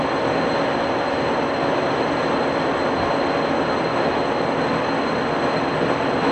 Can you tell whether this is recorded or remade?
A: recorded